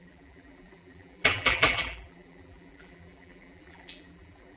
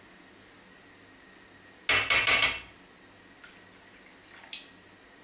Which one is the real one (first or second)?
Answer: second